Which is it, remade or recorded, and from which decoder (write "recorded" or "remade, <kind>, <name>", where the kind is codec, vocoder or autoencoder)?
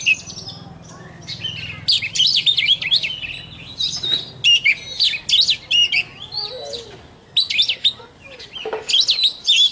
recorded